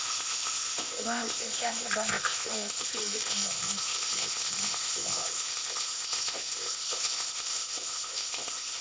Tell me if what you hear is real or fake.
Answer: fake